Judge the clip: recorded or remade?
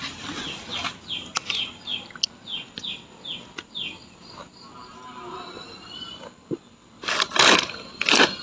recorded